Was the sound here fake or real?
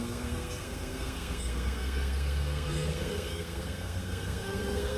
fake